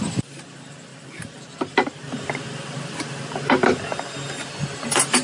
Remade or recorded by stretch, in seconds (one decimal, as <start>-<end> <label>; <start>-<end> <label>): 0.0-5.2 recorded